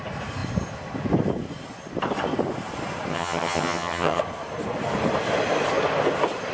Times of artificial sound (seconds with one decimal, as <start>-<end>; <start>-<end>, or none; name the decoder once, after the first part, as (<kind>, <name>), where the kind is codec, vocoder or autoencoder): 3.1-4.2 (vocoder, HiFi-GAN)

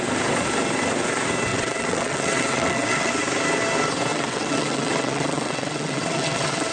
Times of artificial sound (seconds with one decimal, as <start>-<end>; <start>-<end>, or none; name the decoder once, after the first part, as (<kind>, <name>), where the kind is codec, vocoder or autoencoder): 1.5-3.1 (vocoder, WaveNeXt); 4.1-6.7